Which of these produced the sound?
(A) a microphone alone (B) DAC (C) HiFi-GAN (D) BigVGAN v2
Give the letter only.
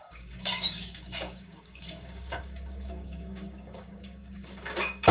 B